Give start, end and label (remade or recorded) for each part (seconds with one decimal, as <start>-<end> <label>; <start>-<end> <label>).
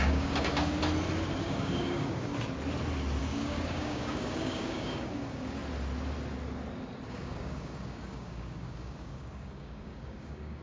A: 0.0-0.8 remade; 0.8-1.4 recorded; 1.4-2.3 remade; 2.3-3.2 recorded; 3.2-5.6 remade; 5.6-7.1 recorded; 7.1-10.6 remade